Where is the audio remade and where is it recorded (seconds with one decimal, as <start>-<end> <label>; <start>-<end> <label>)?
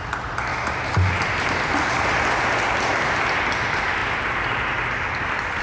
0.0-5.6 recorded